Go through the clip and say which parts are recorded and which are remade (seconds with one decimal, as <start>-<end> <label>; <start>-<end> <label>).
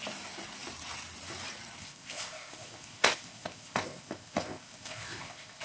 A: 0.0-1.8 recorded; 1.8-5.6 remade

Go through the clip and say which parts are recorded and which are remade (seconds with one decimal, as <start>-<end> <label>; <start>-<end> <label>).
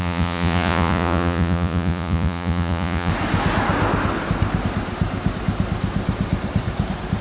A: 0.0-3.1 remade; 3.1-7.2 recorded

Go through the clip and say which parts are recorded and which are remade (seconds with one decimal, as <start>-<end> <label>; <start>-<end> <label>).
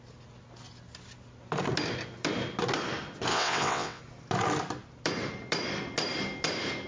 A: 0.0-3.3 recorded; 3.3-4.0 remade; 4.0-6.9 recorded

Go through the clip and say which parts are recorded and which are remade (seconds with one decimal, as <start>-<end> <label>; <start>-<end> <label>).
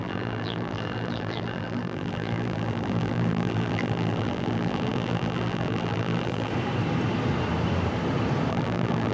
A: 0.0-6.5 remade; 6.5-8.5 recorded; 8.5-9.1 remade